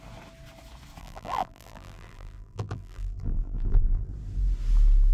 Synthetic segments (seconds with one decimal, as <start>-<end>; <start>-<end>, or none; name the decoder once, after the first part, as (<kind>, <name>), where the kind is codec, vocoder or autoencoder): 1.0-4.1 (vocoder, BigVGAN v2)

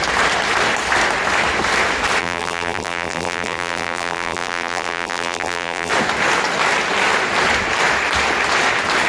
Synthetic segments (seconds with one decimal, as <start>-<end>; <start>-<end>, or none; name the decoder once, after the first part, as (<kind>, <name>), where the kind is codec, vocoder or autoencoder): 2.2-5.9 (vocoder, BigVGAN v2)

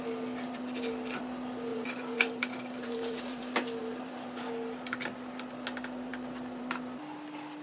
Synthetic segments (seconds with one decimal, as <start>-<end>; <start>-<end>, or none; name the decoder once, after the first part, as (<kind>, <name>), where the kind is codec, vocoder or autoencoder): 1.7-3.4 (vocoder, BigVGAN v2); 3.8-4.4

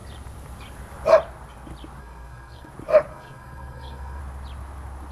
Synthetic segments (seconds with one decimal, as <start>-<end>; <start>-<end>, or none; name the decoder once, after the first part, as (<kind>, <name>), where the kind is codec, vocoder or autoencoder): 2.0-2.7 (codec, SNAC); 3.1-4.2